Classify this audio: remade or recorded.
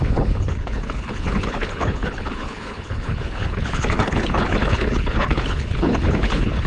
remade